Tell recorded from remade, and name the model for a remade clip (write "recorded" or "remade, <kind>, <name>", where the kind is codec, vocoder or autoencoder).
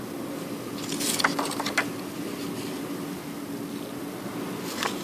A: recorded